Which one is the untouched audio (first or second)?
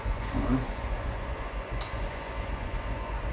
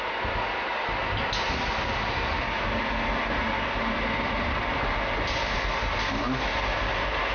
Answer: second